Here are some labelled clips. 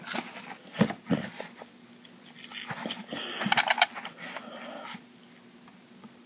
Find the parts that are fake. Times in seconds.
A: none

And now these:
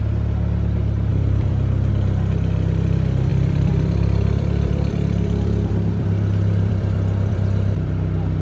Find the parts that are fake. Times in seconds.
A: 1.1-1.9 (vocoder, BigVGAN v2); 3.3-8.4

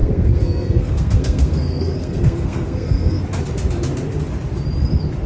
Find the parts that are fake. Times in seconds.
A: 0.0-3.2 (codec, SNAC)

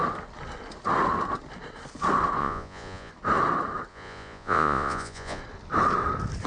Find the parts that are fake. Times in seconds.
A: 2.4-3.1 (vocoder, Vocos); 3.9-5.4

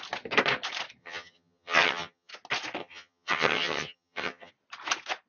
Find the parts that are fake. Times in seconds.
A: 1.0-2.3 (vocoder, HiFi-GAN); 2.8-4.5

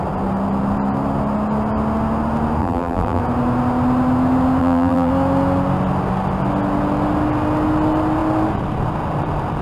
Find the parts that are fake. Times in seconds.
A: 2.6-3.2 (vocoder, BigVGAN v2); 4.6-5.1

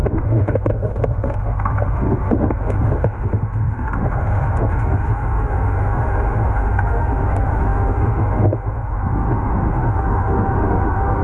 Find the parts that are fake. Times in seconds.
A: 0.0-11.2 (autoencoder, DAC-VAE)